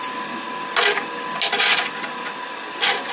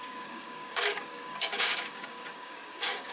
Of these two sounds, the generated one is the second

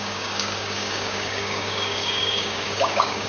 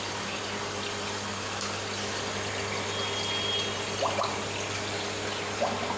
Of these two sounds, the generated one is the first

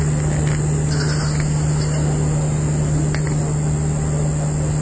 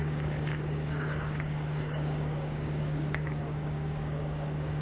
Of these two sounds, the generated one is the second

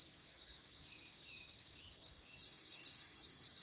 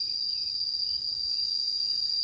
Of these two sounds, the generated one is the first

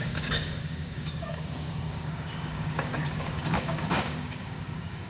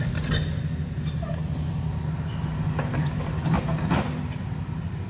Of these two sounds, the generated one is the first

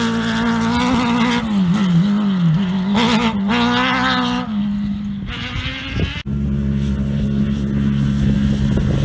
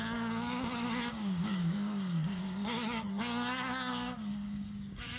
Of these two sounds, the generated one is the second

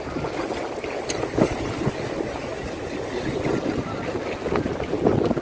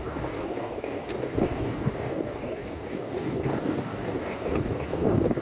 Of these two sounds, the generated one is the second